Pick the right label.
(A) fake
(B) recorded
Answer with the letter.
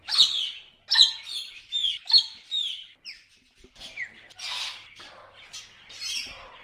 B